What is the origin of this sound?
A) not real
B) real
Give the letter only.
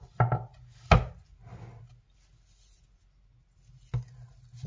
B